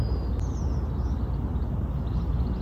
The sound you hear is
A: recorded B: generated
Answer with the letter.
A